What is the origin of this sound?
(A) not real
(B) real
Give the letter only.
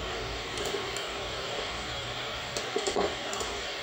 A